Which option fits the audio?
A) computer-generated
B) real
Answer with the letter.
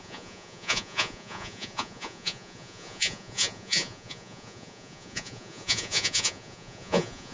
A